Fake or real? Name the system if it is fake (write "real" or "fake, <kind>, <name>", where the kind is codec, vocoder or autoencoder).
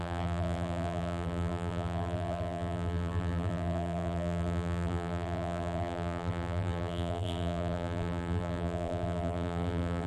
fake, vocoder, BigVGAN v2